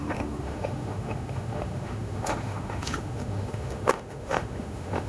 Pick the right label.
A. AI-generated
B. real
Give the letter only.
A